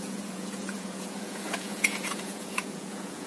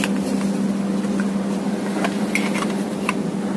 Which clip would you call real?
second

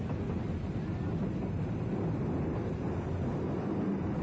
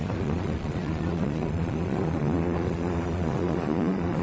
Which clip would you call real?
first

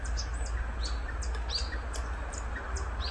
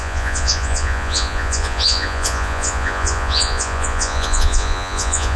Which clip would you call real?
first